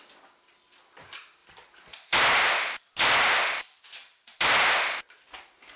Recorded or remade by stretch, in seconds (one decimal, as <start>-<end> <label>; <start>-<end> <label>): 0.0-1.4 recorded; 1.4-4.6 remade; 4.6-5.8 recorded

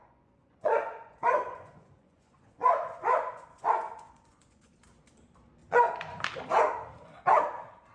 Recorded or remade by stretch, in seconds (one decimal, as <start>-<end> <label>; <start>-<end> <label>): 0.0-4.7 remade; 4.7-5.6 recorded; 5.6-6.2 remade; 6.2-7.9 recorded